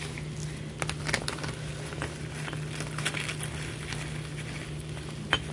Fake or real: real